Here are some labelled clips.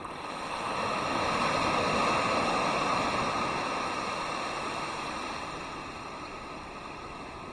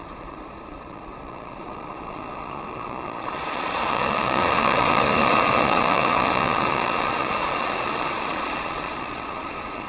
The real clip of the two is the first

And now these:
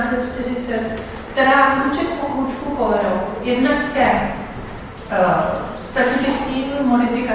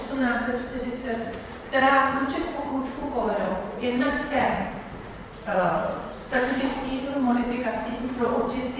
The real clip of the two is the first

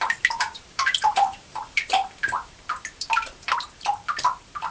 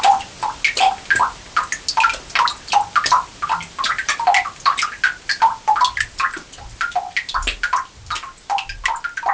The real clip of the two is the second